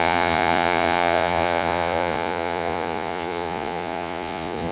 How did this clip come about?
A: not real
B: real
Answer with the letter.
A